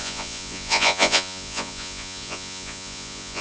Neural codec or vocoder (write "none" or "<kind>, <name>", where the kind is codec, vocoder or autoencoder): vocoder, Vocos